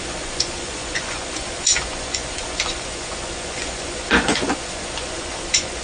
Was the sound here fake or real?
fake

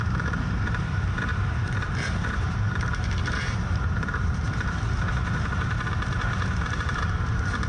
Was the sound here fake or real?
fake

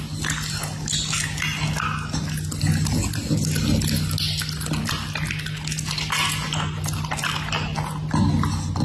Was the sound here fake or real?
real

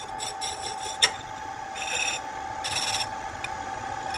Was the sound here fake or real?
real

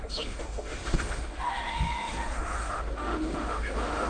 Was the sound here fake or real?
fake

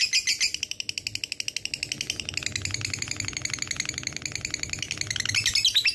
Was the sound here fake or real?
real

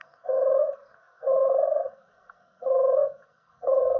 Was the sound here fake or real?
fake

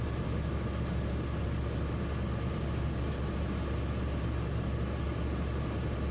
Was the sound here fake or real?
real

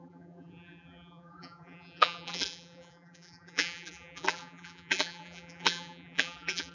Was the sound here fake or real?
fake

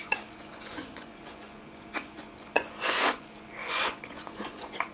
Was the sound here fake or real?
fake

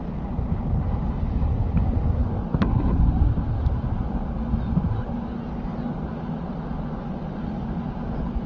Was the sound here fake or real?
real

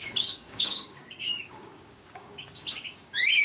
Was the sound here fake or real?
fake